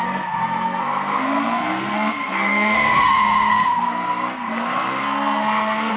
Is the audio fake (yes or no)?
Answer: yes